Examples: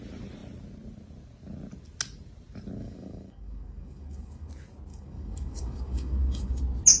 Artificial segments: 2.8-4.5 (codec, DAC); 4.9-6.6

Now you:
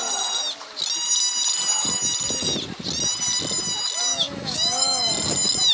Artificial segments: 4.1-5.1 (autoencoder, DAC-VAE)

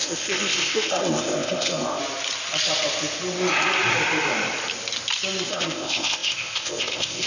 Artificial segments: 0.0-2.0 (codec, ZipCodec); 5.5-7.3

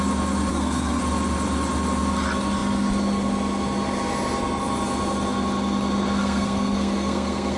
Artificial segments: 0.5-1.0 (codec, SNAC); 6.2-7.6